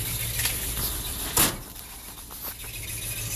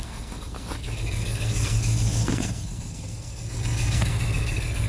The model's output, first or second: second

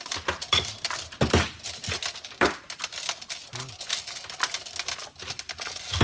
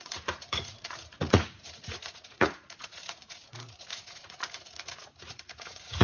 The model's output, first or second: second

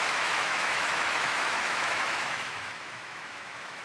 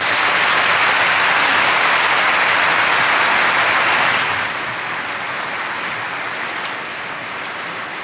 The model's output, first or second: first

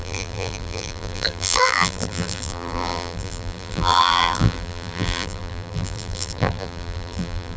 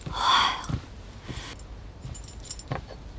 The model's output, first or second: first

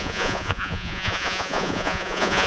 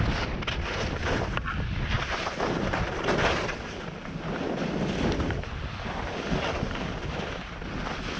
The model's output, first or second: first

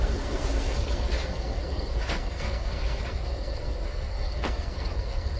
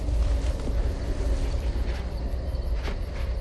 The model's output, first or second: first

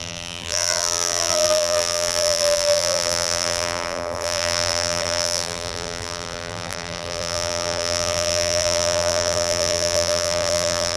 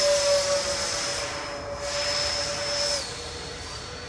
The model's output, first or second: first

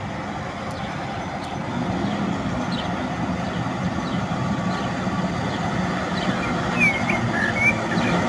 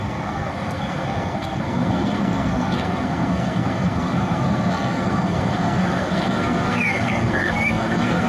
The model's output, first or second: second